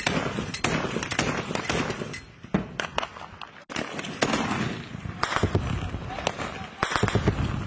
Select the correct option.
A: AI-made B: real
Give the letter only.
B